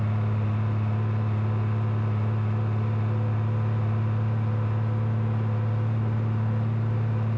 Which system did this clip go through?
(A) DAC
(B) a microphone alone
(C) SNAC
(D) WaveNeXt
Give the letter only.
B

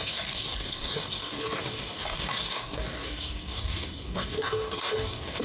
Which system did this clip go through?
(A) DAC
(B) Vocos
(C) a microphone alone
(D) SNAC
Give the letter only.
A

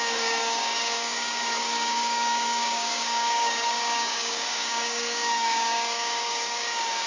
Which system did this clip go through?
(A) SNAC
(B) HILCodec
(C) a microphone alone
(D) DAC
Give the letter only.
D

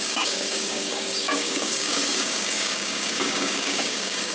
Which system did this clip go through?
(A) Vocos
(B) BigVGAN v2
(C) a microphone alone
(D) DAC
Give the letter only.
D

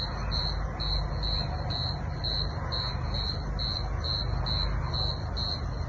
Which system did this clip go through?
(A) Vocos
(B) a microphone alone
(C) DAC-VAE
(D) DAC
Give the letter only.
B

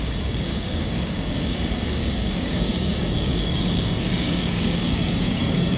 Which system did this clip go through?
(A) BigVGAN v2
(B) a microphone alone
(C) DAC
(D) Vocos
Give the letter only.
C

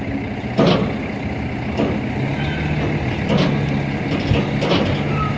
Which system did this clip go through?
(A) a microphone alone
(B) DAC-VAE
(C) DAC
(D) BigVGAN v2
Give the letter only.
A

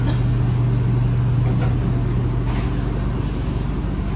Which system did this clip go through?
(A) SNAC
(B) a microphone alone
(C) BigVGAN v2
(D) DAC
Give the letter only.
B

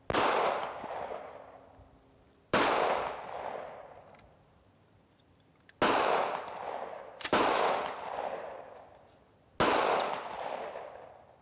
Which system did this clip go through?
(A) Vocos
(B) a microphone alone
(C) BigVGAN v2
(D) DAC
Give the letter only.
B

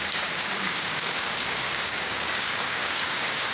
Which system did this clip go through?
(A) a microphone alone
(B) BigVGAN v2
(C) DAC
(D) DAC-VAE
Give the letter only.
C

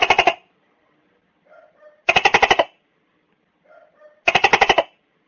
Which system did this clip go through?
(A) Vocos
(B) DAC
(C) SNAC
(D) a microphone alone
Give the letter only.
D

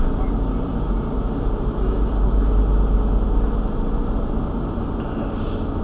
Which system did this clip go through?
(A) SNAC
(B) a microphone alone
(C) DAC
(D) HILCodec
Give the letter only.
B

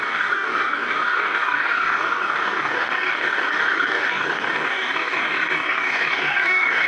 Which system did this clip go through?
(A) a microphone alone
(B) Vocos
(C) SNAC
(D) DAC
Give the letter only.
D